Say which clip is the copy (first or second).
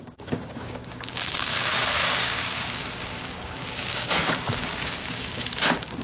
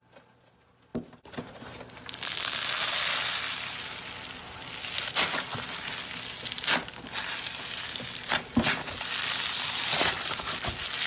first